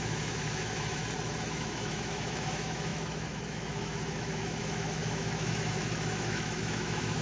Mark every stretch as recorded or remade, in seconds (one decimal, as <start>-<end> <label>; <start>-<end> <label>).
0.0-1.0 remade; 1.0-1.5 recorded; 1.5-7.2 remade